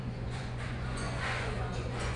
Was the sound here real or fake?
fake